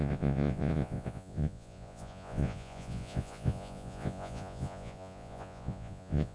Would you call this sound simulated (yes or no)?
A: yes